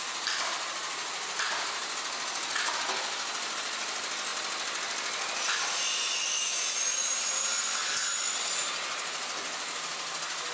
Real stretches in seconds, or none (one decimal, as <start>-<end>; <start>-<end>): 0.0-10.5